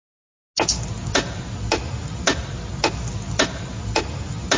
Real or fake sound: real